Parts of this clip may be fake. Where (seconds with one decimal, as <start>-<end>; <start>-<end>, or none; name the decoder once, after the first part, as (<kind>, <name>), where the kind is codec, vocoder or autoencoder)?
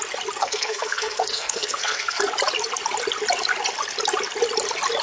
0.4-2.2 (codec, SNAC)